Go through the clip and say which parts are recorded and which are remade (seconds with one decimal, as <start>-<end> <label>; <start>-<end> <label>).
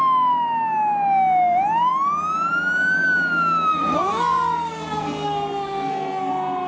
0.0-3.7 recorded; 3.7-6.3 remade; 6.3-6.7 recorded